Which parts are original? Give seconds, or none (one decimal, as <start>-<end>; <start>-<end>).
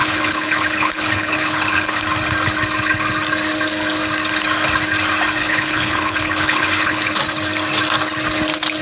2.0-5.4; 7.2-8.8